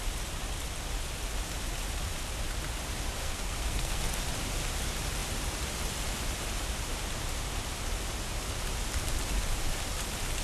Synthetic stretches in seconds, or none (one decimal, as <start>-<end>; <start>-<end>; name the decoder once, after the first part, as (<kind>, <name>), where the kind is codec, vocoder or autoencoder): 3.2-4.0 (codec, SNAC)